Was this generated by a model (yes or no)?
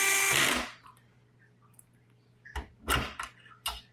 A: no